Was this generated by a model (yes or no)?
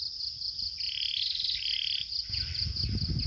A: no